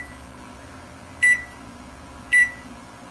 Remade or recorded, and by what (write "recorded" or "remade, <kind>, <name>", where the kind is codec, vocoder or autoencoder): remade, vocoder, BigVGAN v2